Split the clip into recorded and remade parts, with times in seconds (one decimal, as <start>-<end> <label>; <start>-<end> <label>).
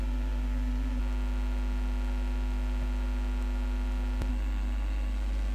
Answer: 0.0-1.0 remade; 1.0-4.3 recorded; 4.3-5.5 remade